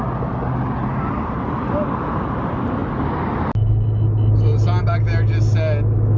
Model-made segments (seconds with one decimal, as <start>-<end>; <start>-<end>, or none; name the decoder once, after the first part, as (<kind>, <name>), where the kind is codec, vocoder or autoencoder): none